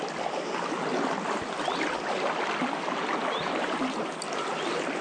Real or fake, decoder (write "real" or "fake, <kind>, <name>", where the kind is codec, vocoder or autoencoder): real